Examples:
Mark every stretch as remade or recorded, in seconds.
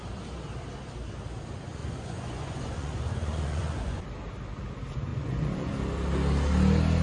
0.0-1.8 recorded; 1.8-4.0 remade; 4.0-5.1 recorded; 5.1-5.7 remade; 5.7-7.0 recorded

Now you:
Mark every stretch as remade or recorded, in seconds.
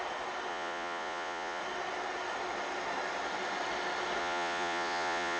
0.0-0.5 recorded; 0.5-1.6 remade; 1.6-4.2 recorded; 4.2-5.4 remade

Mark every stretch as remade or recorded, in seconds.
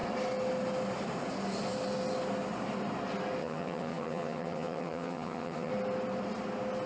0.0-3.4 recorded; 3.4-5.7 remade; 5.7-6.9 recorded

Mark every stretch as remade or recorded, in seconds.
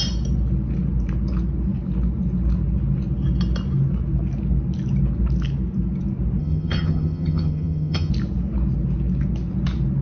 0.0-6.4 recorded; 6.4-8.1 remade; 8.1-10.0 recorded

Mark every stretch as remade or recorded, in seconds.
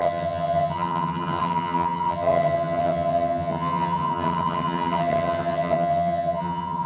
0.0-6.9 remade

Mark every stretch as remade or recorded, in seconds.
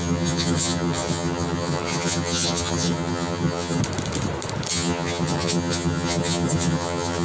0.0-3.8 remade; 3.8-4.7 recorded; 4.7-7.2 remade